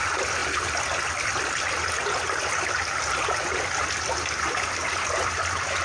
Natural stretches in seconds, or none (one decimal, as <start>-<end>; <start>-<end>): 0.0-5.8

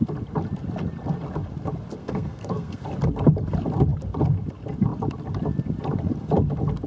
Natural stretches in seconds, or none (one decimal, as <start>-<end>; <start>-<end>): 0.0-2.0; 2.8-6.9